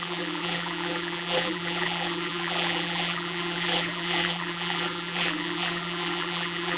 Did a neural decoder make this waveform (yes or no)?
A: yes